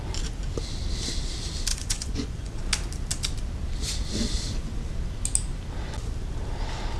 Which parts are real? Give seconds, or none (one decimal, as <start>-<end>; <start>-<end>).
0.0-1.7; 2.6-7.0